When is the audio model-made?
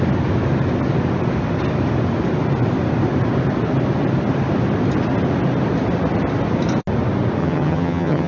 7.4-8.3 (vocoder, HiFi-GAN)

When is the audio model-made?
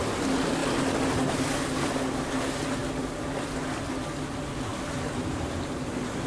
none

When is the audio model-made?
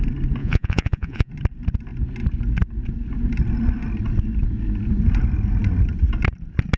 0.4-1.3 (vocoder, Vocos)